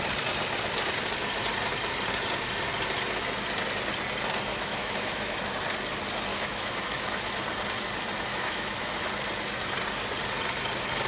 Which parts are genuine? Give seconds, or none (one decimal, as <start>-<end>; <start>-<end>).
0.0-4.5; 5.3-6.3; 7.3-8.3; 9.1-11.1